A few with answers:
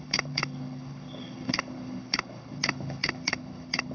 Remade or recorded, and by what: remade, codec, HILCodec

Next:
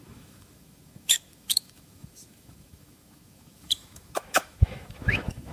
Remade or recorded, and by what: remade, autoencoder, DAC-VAE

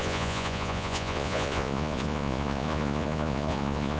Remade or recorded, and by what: remade, vocoder, Vocos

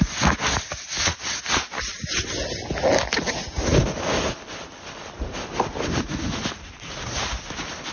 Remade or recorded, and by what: recorded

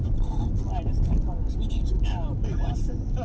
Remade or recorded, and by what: recorded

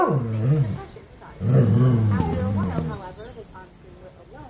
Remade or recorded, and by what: recorded